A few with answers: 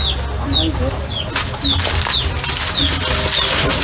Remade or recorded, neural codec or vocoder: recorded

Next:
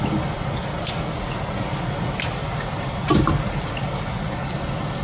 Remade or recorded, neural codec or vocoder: recorded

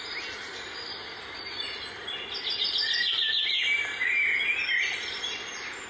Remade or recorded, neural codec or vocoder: recorded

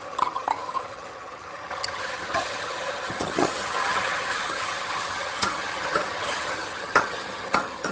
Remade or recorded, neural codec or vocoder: remade, vocoder, HiFi-GAN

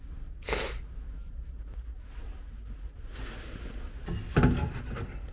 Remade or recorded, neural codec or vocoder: recorded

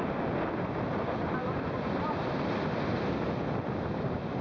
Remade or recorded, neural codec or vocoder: recorded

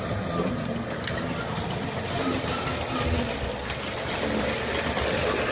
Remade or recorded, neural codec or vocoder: recorded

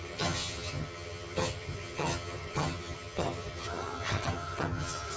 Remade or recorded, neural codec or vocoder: remade, vocoder, HiFi-GAN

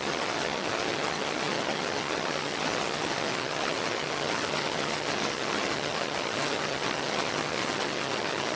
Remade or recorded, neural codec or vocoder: remade, vocoder, HiFi-GAN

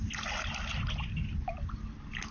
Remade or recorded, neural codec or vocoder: recorded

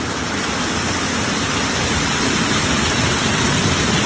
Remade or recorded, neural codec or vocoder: recorded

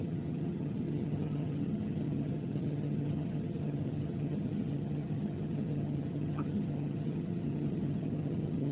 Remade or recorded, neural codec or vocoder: remade, vocoder, HiFi-GAN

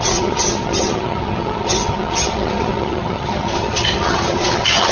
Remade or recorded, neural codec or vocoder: remade, vocoder, HiFi-GAN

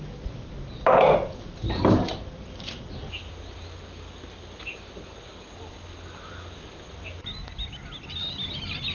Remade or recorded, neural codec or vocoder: recorded